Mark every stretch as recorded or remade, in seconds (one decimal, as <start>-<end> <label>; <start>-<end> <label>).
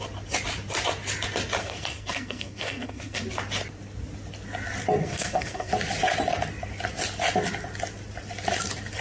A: 0.0-1.6 recorded; 1.6-3.2 remade; 3.2-5.0 recorded; 5.0-5.7 remade; 5.7-9.0 recorded